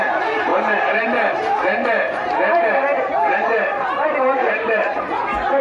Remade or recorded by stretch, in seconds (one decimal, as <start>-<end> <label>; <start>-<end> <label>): 0.0-0.5 recorded; 0.5-1.3 remade; 1.3-2.9 recorded; 2.9-5.1 remade; 5.1-5.6 recorded